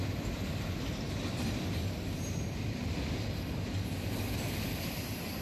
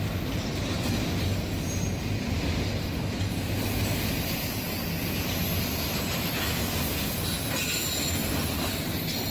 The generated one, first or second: first